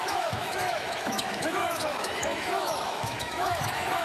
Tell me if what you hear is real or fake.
fake